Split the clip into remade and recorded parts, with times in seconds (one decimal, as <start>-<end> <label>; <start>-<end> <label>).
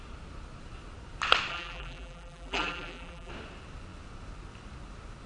0.0-1.5 recorded; 1.5-3.3 remade; 3.3-5.3 recorded